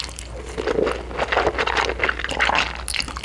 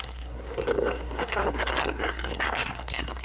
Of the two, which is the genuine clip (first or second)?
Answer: first